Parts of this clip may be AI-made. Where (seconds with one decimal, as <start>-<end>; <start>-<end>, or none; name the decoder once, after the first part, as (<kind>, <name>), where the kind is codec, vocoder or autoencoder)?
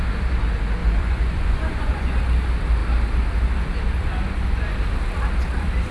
0.8-2.2 (vocoder, Vocos)